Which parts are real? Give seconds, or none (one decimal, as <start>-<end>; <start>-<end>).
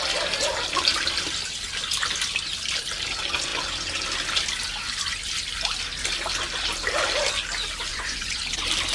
0.0-7.9; 8.4-8.9